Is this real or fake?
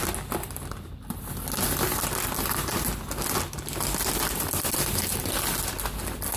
real